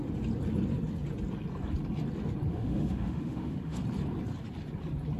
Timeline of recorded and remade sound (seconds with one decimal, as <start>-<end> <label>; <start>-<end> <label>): 0.0-2.5 recorded; 2.5-3.8 remade; 3.8-5.2 recorded